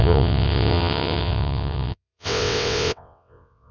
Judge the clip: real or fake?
fake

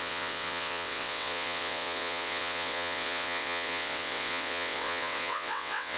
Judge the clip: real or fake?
fake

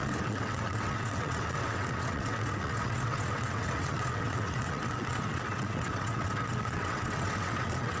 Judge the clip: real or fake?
fake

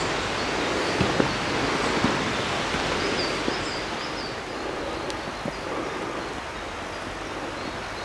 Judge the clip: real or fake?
real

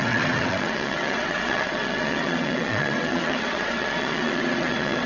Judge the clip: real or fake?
fake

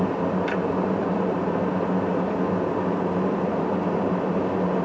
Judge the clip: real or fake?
real